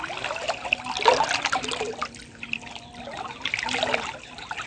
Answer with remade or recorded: recorded